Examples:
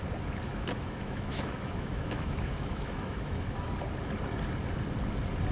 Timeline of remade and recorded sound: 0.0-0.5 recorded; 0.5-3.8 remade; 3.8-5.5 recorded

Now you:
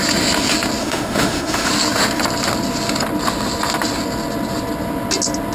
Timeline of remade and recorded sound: 0.0-0.8 recorded; 0.8-1.7 remade; 1.7-5.5 recorded

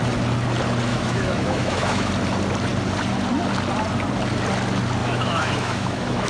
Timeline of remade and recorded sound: 0.0-0.9 recorded; 0.9-2.1 remade; 2.1-5.0 recorded; 5.0-6.3 remade

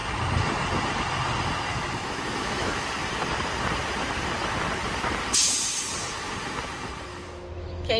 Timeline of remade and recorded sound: 0.0-1.7 recorded; 1.7-2.9 remade; 2.9-7.1 recorded; 7.1-8.0 remade

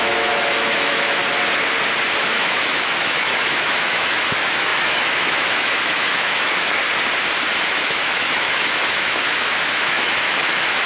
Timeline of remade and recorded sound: 0.0-1.2 remade; 1.2-2.2 recorded; 2.2-6.8 remade; 6.8-7.7 recorded; 7.7-10.9 remade

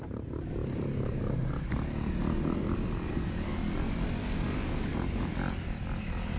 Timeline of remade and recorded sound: 0.0-6.4 recorded